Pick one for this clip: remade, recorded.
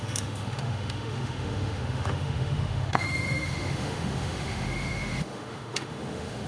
remade